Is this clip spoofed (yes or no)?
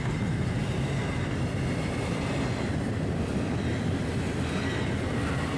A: no